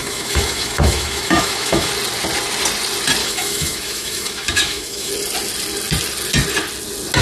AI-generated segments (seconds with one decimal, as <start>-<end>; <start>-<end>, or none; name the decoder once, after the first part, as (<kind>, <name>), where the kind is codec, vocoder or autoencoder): 0.0-1.9 (autoencoder, DAC-VAE); 3.2-5.1